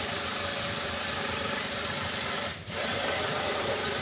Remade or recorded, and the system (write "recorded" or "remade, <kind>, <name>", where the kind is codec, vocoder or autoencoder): remade, vocoder, BigVGAN v2